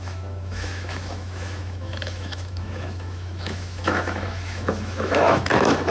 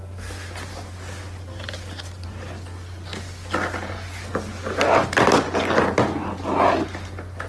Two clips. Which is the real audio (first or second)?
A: second